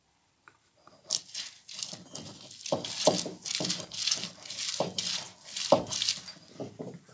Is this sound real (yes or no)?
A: yes